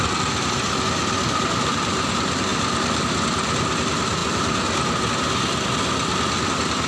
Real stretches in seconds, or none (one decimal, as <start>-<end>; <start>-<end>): 0.0-6.9